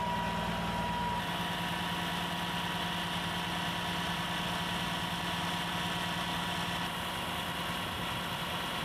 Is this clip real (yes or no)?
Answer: yes